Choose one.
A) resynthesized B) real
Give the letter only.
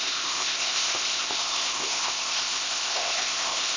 A